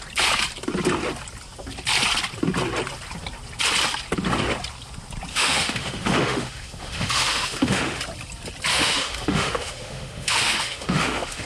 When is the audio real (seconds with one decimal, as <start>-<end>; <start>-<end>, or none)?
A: 0.0-5.3; 8.0-8.7